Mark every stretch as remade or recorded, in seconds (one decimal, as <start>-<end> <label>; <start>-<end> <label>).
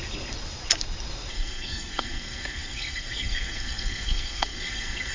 0.0-1.3 recorded; 1.3-5.1 remade